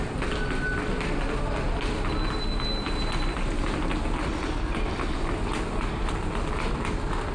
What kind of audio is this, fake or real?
real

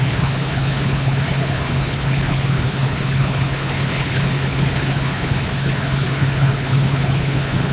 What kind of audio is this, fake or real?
fake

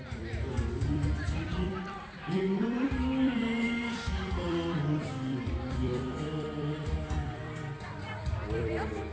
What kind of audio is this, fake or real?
fake